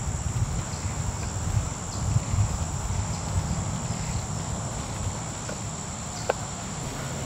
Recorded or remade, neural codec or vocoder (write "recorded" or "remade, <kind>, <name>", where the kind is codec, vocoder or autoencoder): recorded